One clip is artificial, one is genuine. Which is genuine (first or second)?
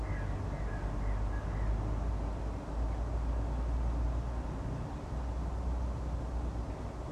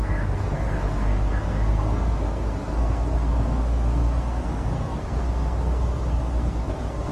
first